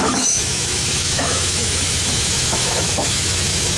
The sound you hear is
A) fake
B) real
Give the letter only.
A